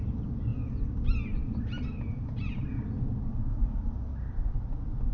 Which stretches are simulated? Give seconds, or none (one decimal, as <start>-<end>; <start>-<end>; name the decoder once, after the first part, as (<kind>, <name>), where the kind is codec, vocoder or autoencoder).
none